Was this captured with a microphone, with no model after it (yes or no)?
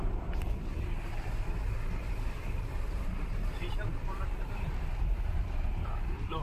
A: no